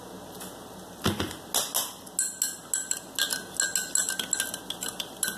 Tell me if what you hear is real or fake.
real